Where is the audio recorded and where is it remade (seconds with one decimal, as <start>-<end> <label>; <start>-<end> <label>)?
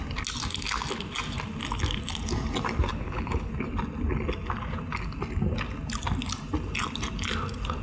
0.0-2.9 recorded; 2.9-3.5 remade; 3.5-7.8 recorded